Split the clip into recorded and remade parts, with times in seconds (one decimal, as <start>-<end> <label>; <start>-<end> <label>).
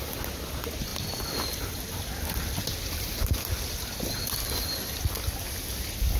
0.0-0.9 recorded; 0.9-2.6 remade; 2.6-6.2 recorded